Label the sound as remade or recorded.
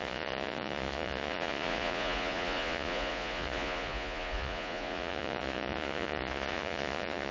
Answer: remade